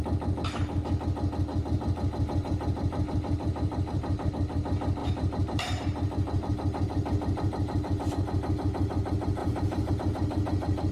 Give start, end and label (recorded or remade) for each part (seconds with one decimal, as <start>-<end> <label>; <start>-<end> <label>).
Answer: 0.0-1.5 recorded; 1.5-4.3 remade; 4.3-5.0 recorded; 5.0-8.1 remade; 8.1-9.4 recorded; 9.4-9.9 remade; 9.9-10.9 recorded